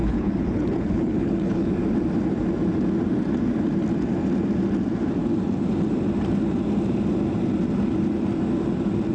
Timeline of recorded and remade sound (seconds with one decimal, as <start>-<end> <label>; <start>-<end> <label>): 0.0-1.7 remade; 1.7-9.1 recorded